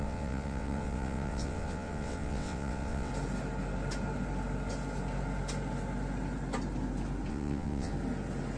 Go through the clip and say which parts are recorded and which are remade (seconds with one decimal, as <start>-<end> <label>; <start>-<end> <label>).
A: 0.0-3.1 remade; 3.1-7.3 recorded; 7.3-7.9 remade; 7.9-8.6 recorded